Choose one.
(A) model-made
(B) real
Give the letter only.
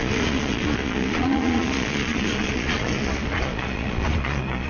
A